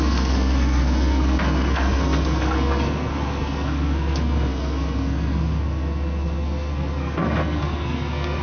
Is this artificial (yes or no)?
yes